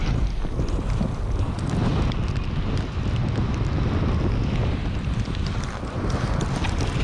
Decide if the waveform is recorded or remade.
recorded